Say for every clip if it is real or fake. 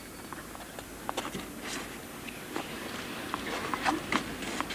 real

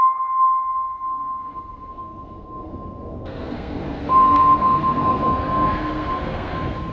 fake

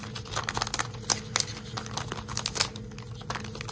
real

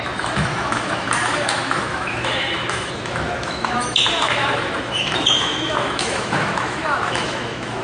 fake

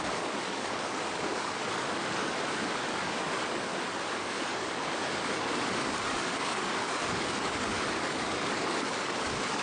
fake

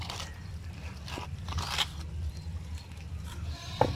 real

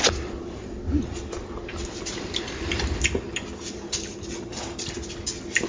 real